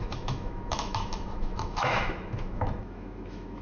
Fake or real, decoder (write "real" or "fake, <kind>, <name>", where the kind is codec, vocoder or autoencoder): fake, autoencoder, DAC-VAE